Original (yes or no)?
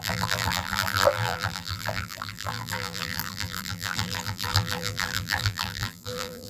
no